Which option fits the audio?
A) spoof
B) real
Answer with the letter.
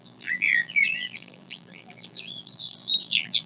A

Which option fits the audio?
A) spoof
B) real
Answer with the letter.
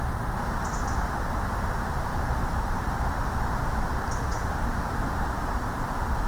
A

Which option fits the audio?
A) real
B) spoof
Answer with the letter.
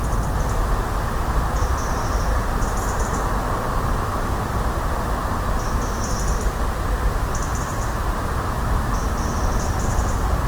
A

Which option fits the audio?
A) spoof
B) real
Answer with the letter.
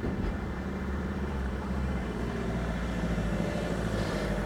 A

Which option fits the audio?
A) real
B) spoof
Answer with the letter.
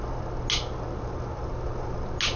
A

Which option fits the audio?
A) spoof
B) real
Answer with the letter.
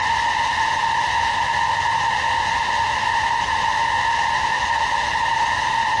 B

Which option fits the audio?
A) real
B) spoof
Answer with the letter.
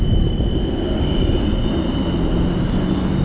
A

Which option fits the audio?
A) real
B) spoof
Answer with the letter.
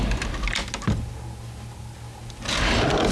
A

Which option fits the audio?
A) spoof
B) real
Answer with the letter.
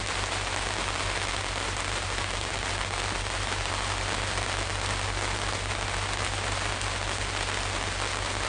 B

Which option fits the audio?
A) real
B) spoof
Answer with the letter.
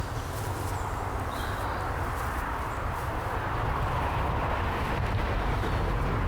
B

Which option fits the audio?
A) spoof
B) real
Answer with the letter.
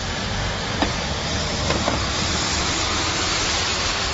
A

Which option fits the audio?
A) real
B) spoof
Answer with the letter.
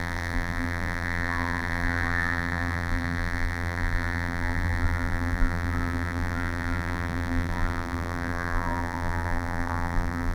B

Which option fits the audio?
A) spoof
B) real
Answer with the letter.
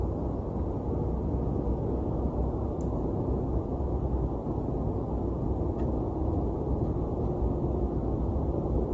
B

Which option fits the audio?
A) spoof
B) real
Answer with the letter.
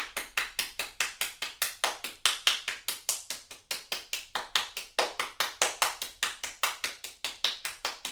B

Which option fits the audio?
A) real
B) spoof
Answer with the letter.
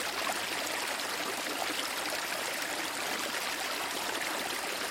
A